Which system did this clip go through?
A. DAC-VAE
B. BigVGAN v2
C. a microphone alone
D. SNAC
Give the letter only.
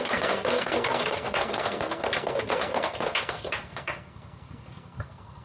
D